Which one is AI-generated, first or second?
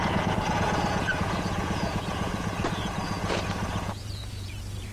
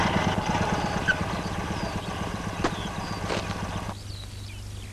first